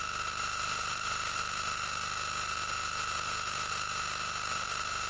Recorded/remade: recorded